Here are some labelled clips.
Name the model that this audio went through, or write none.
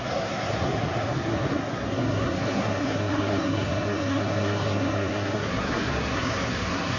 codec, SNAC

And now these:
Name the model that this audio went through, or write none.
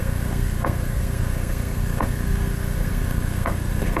codec, SNAC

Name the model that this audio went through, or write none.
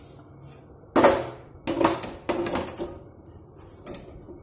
none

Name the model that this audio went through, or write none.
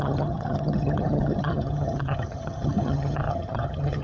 vocoder, HiFi-GAN